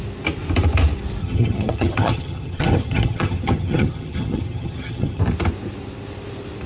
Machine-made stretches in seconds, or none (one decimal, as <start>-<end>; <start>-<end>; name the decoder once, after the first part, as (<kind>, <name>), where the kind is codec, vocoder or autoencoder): 1.2-5.2 (vocoder, HiFi-GAN)